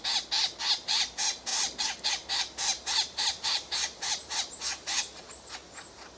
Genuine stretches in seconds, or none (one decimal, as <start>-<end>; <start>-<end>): 0.0-2.7; 5.3-6.2